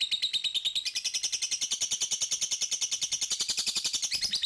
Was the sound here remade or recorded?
recorded